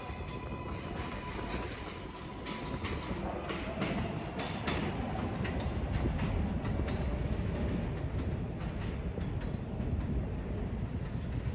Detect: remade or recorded recorded